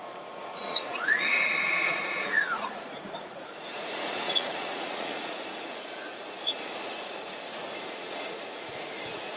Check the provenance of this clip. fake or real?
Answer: fake